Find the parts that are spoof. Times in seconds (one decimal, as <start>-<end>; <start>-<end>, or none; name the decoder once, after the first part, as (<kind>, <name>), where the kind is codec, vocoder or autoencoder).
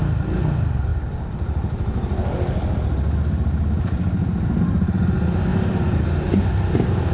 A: 5.5-6.2 (vocoder, BigVGAN v2)